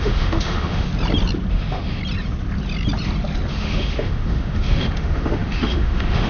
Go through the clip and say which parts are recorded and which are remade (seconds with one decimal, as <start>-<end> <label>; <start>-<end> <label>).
0.0-0.9 remade; 0.9-1.5 recorded; 1.5-2.0 remade; 2.0-3.5 recorded; 3.5-6.3 remade